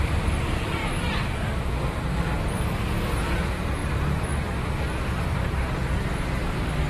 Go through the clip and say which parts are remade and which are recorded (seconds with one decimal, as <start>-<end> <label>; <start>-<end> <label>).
0.0-6.9 recorded

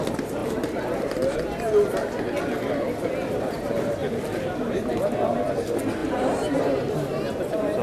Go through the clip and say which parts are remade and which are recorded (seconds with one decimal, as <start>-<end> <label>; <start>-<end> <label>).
0.0-4.0 recorded; 4.0-4.9 remade; 4.9-6.0 recorded; 6.0-6.6 remade; 6.6-7.8 recorded

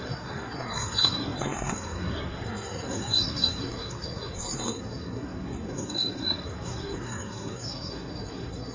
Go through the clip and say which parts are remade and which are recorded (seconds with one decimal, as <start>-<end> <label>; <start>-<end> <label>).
0.0-8.7 remade

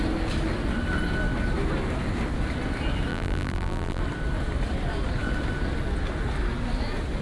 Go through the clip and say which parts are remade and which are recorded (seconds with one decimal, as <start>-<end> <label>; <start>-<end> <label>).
0.0-3.1 recorded; 3.1-4.0 remade; 4.0-7.2 recorded

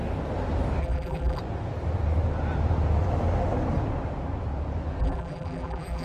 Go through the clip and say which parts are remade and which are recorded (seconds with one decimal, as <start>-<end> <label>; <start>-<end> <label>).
0.0-0.8 recorded; 0.8-1.4 remade; 1.4-5.0 recorded; 5.0-6.0 remade

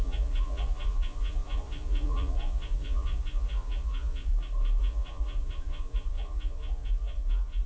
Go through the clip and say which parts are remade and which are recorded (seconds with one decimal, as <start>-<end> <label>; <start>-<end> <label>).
0.0-4.3 remade; 4.3-4.8 recorded; 4.8-7.7 remade

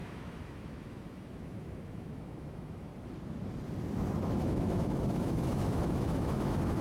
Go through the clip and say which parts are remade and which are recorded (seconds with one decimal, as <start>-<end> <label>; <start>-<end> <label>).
0.0-2.9 remade; 2.9-4.2 recorded; 4.2-6.8 remade

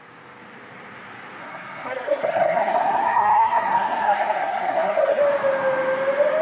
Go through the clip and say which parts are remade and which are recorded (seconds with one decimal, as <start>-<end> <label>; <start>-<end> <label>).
0.0-1.4 recorded; 1.4-5.2 remade; 5.2-6.4 recorded